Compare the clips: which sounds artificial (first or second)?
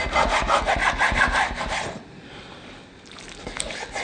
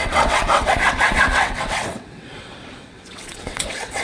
second